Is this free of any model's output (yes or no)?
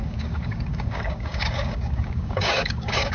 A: no